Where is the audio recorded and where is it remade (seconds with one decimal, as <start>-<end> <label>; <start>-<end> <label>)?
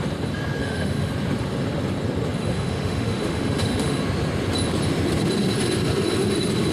0.0-0.6 recorded; 0.6-1.1 remade; 1.1-2.4 recorded; 2.4-4.0 remade; 4.0-6.7 recorded